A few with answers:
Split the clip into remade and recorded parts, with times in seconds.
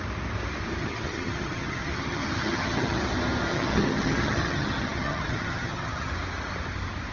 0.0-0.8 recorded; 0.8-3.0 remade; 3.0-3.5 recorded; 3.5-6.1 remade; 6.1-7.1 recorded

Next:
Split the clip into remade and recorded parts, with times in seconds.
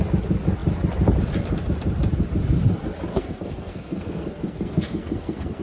0.0-3.1 recorded; 3.1-5.6 remade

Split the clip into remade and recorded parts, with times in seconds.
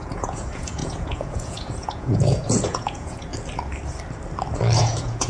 0.0-3.3 remade; 3.3-4.8 recorded; 4.8-5.3 remade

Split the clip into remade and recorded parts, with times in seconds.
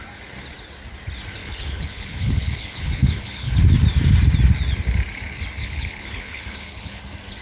0.0-1.4 recorded; 1.4-3.5 remade; 3.5-5.6 recorded; 5.6-7.0 remade; 7.0-7.4 recorded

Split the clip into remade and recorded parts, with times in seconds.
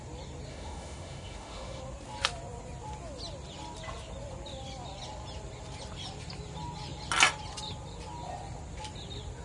0.0-0.5 recorded; 0.5-1.8 remade; 1.8-9.4 recorded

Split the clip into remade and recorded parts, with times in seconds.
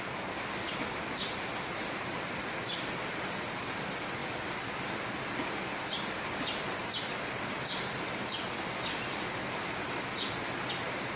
0.0-11.2 recorded